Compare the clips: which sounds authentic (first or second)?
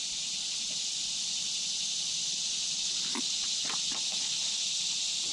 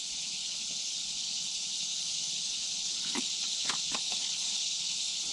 first